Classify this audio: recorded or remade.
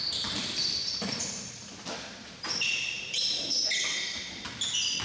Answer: remade